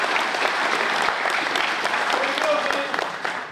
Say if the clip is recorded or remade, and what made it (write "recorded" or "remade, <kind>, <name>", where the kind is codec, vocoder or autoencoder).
remade, vocoder, BigVGAN v2